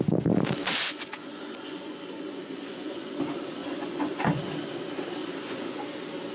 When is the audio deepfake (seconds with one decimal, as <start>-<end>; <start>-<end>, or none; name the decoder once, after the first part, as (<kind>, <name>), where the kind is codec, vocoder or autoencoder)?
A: 0.9-3.2 (vocoder, Vocos); 3.6-4.4; 5.2-5.8